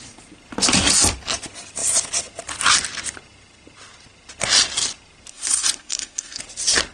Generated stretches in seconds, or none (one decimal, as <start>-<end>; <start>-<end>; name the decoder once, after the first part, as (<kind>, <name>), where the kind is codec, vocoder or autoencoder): 5.3-6.4 (codec, SNAC)